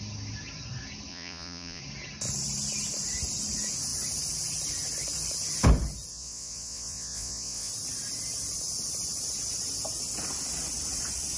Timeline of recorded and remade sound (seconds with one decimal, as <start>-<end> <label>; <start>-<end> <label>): 0.0-1.1 recorded; 1.1-1.8 remade; 1.8-6.1 recorded; 6.1-7.7 remade; 7.7-11.4 recorded